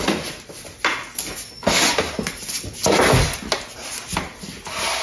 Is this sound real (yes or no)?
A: yes